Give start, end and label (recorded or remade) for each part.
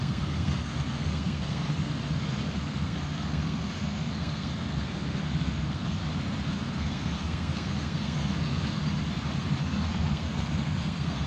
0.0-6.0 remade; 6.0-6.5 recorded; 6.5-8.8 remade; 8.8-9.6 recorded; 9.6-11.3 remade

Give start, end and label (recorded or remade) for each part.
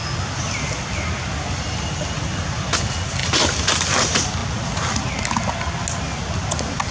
0.0-6.9 recorded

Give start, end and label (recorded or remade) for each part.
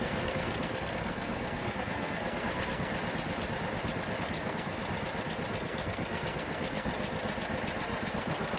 0.0-2.9 remade; 2.9-4.2 recorded; 4.2-4.8 remade; 4.8-5.5 recorded; 5.5-6.9 remade; 6.9-8.1 recorded; 8.1-8.6 remade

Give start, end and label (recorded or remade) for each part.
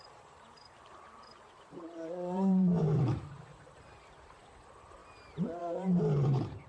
0.0-5.0 remade; 5.0-5.6 recorded; 5.6-6.7 remade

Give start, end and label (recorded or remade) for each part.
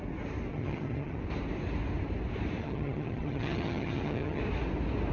0.0-0.5 recorded; 0.5-1.2 remade; 1.2-2.6 recorded; 2.6-4.4 remade; 4.4-5.1 recorded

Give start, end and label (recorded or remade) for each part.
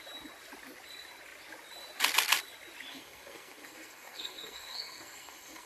0.0-2.9 recorded; 2.9-5.7 remade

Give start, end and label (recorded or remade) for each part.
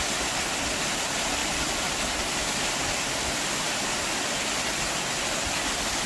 0.0-6.1 recorded